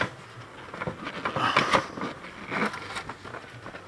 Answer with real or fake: real